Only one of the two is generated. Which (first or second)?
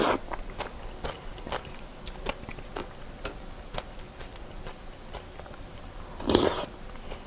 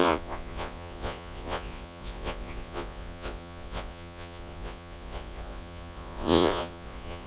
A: second